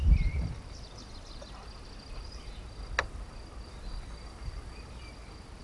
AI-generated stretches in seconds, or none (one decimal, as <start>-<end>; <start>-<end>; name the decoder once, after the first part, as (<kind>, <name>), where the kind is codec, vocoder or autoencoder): none